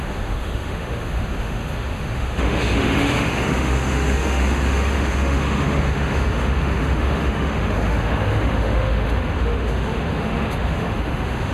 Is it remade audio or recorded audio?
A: remade